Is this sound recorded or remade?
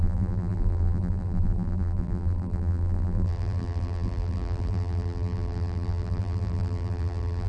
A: remade